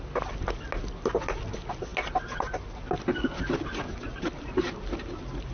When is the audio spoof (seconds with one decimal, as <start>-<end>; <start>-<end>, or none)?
none